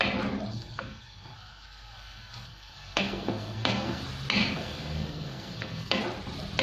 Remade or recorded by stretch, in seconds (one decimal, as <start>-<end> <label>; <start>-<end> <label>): 0.0-0.5 recorded; 0.5-4.0 remade; 4.0-4.4 recorded; 4.4-6.0 remade; 6.0-6.6 recorded